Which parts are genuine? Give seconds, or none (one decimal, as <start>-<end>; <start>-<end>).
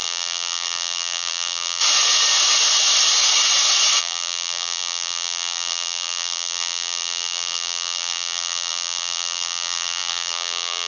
1.8-4.0